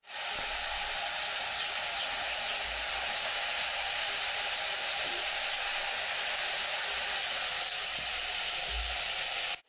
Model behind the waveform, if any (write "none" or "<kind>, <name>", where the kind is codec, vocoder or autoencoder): none